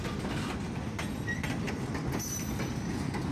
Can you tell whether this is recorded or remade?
recorded